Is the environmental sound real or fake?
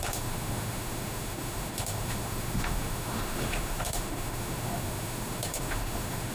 fake